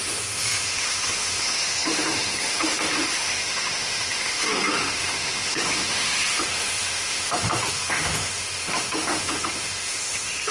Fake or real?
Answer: fake